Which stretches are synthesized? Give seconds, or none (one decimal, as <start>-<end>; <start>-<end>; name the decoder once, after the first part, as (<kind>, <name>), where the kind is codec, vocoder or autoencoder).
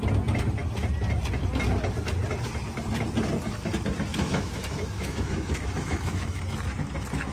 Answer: 4.1-6.4 (autoencoder, DAC-VAE)